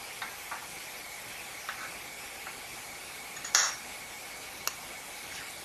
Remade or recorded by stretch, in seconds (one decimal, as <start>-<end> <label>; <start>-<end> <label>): 0.0-5.6 recorded